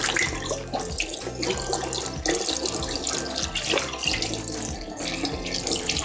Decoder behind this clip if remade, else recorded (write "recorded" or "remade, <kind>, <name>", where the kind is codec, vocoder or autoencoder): recorded